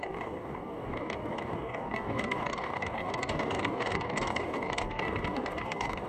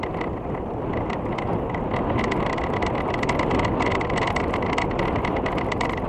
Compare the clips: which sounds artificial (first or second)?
first